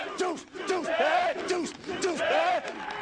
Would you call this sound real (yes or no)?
yes